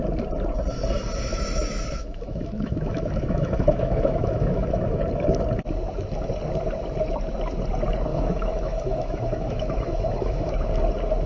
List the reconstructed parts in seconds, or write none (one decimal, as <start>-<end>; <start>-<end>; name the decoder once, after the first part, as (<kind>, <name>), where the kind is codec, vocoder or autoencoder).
1.3-5.0 (autoencoder, DAC-VAE); 8.1-10.5